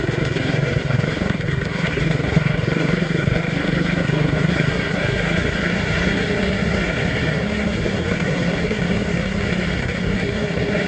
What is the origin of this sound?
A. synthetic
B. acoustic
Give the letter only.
A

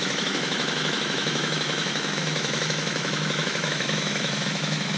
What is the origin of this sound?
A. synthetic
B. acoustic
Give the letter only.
A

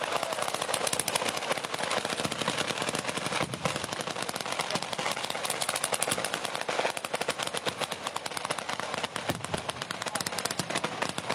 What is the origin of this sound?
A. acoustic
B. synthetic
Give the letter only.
A